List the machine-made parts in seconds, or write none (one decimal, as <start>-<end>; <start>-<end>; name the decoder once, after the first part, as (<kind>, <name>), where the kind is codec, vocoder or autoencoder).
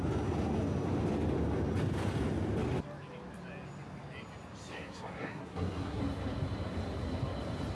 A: 4.7-6.0 (codec, SNAC)